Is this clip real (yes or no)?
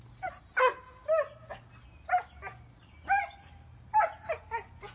yes